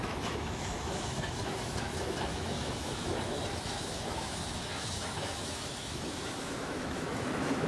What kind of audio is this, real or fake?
fake